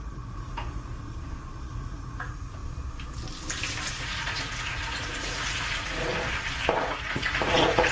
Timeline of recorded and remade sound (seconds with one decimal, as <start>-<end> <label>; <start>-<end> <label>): 0.0-0.9 remade; 0.9-1.7 recorded; 1.7-2.6 remade; 2.6-3.9 recorded; 3.9-6.1 remade; 6.1-6.8 recorded; 6.8-7.9 remade